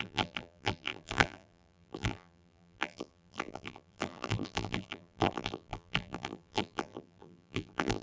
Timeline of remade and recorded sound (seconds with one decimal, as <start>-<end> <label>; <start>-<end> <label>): 0.0-8.0 remade